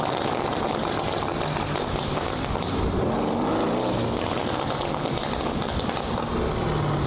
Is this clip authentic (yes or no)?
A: yes